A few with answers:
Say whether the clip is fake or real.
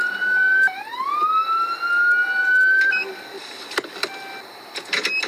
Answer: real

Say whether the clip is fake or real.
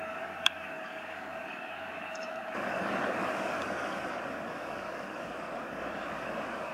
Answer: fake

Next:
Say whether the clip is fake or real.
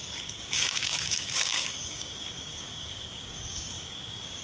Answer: fake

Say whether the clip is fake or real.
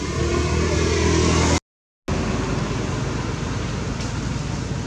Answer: real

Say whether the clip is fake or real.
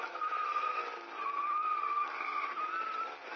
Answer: real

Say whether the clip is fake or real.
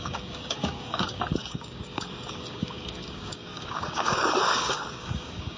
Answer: fake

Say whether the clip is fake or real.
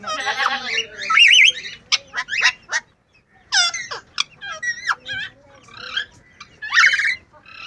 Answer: real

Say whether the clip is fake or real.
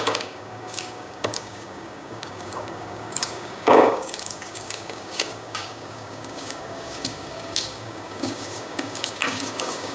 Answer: fake